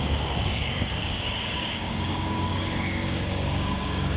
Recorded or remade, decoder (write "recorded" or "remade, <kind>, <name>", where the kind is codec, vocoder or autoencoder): remade, codec, DAC